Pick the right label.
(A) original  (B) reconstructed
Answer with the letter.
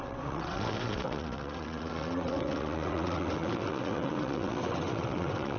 B